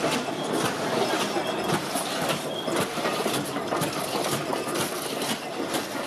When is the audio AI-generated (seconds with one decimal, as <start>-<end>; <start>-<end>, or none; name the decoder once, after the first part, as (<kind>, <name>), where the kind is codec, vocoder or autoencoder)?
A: 2.9-3.7 (vocoder, BigVGAN v2)